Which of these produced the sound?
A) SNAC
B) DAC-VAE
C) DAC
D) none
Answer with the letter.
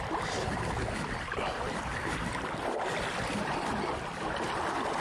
D